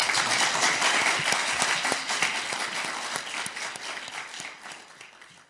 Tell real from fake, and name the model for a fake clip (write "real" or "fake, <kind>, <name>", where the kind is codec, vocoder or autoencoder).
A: fake, vocoder, BigVGAN v2